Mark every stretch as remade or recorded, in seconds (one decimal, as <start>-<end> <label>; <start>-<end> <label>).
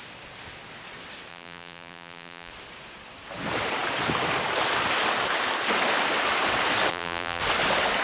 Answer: 0.0-1.3 recorded; 1.3-2.5 remade; 2.5-6.9 recorded; 6.9-7.4 remade; 7.4-8.0 recorded